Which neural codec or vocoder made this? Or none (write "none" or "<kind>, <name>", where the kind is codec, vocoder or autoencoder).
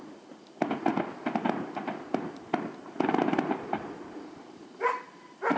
none